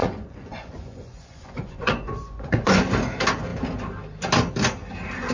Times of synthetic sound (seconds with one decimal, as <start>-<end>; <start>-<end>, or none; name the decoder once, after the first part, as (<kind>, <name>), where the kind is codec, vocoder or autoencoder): 0.0-2.8 (vocoder, Vocos)